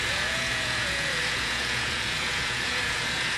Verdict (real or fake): fake